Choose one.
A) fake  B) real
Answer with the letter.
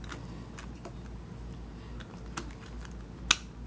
B